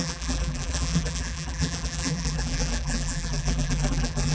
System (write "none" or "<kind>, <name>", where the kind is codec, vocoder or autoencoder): vocoder, BigVGAN v2